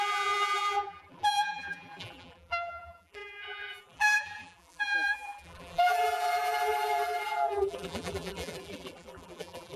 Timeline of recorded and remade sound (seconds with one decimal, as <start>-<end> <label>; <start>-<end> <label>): 0.0-9.8 remade